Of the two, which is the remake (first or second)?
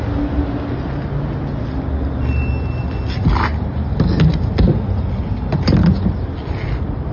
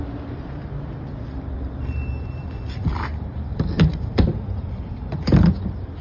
second